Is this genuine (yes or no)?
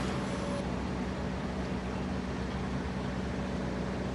yes